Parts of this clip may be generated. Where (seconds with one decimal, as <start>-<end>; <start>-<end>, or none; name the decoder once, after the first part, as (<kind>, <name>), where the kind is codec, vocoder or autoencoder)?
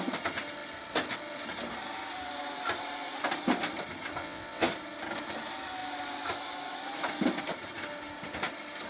4.2-4.7 (vocoder, WaveNeXt)